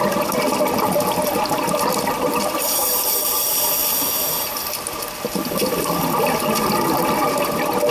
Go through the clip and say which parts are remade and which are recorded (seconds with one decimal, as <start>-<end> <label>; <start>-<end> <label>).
0.0-7.9 recorded